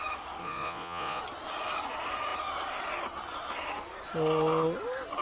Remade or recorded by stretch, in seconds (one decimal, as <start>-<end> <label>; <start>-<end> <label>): 0.0-0.4 recorded; 0.4-1.2 remade; 1.2-5.2 recorded